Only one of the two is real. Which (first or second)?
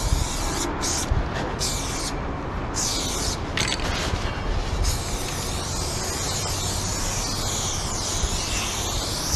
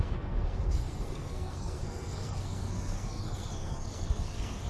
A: first